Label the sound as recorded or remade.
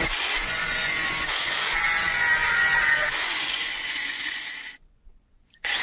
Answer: remade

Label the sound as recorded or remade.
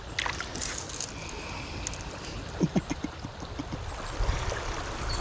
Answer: recorded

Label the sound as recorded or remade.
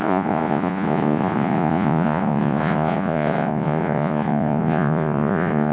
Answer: remade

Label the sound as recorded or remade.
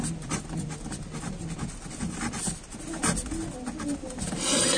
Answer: recorded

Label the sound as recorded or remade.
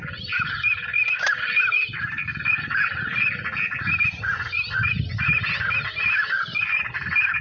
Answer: recorded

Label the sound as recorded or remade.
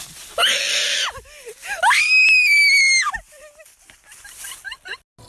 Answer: recorded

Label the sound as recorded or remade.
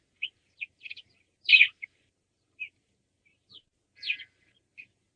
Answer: recorded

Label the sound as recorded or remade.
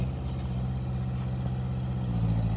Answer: recorded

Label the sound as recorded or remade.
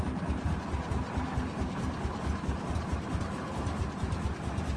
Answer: recorded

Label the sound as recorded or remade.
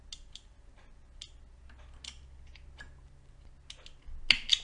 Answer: recorded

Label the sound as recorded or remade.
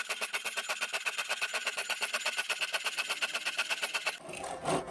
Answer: recorded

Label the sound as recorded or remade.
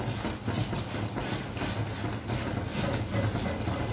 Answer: recorded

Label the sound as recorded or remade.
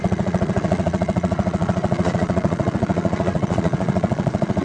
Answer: remade